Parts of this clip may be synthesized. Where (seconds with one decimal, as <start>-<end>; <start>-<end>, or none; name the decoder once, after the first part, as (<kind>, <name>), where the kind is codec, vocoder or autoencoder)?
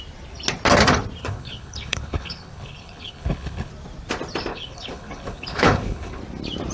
1.2-3.7 (codec, HILCodec); 4.5-6.2